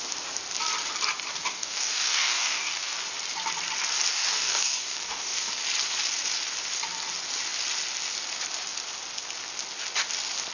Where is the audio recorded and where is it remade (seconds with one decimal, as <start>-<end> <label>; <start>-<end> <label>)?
0.0-1.3 recorded; 1.3-3.0 remade; 3.0-4.1 recorded; 4.1-5.5 remade; 5.5-10.5 recorded